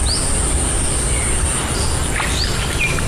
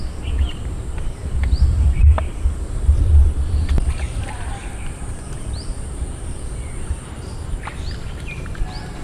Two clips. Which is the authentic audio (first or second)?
first